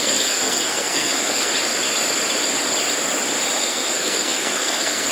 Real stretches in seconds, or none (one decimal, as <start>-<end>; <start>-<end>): 1.5-3.6